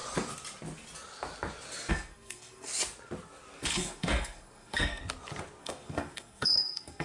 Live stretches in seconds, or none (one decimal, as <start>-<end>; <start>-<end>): 0.0-1.9; 2.7-3.6; 5.0-5.6